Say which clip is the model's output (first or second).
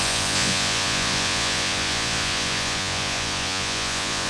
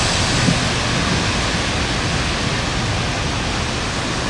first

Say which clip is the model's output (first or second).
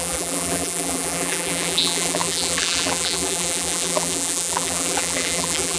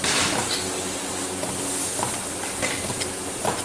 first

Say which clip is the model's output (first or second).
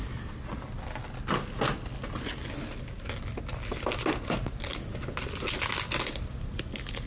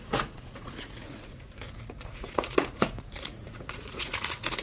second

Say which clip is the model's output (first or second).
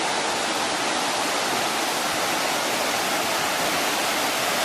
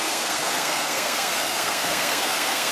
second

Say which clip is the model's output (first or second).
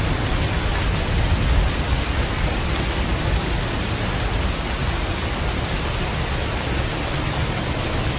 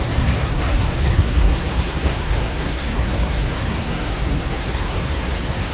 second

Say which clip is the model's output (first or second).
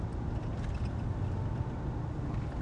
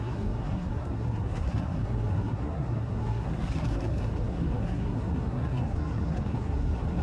second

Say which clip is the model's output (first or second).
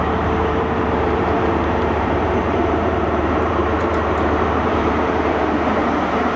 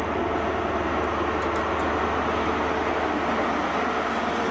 first